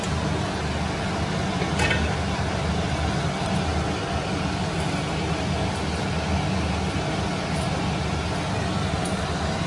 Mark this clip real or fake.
real